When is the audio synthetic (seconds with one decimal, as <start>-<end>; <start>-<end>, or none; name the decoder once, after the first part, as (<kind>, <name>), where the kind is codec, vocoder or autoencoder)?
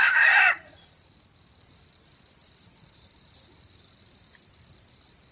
0.0-1.0 (vocoder, Vocos)